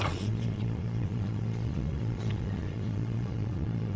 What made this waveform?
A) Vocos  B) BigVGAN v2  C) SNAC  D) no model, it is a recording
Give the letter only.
A